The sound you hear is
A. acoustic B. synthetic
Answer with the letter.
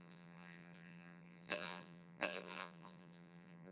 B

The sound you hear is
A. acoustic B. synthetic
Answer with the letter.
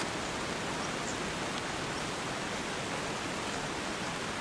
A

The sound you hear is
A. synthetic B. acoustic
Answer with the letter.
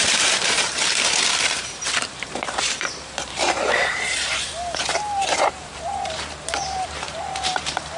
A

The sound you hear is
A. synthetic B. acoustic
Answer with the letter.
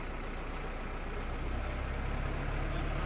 B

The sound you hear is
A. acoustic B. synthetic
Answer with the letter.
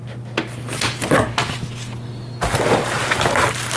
A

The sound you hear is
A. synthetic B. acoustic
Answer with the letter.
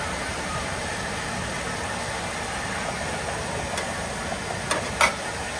B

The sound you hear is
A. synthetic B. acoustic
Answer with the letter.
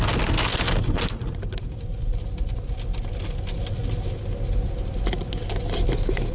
B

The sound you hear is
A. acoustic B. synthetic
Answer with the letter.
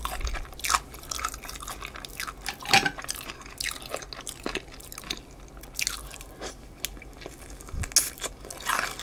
A